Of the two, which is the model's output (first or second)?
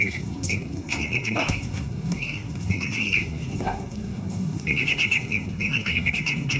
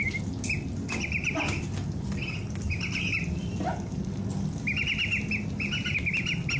first